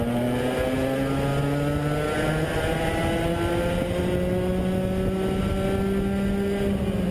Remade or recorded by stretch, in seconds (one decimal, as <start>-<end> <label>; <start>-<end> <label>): 0.0-7.1 recorded